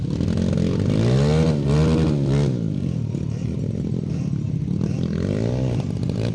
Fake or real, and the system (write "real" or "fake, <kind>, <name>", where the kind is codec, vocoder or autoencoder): real